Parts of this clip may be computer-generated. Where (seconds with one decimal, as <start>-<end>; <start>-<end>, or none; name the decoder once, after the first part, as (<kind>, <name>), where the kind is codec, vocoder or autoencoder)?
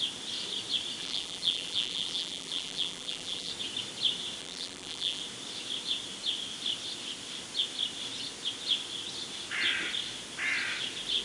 1.0-3.5 (vocoder, BigVGAN v2); 4.4-5.2